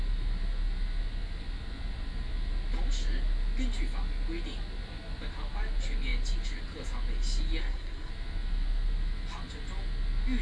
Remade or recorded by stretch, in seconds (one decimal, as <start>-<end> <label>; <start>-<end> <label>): 0.0-7.6 recorded; 7.6-8.1 remade; 8.1-10.4 recorded